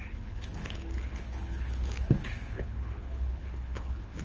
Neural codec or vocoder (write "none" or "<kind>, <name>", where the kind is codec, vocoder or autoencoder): codec, HILCodec